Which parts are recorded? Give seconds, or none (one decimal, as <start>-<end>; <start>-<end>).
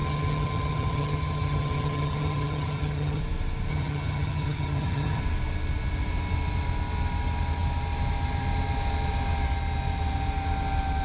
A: 3.2-3.7; 5.2-11.0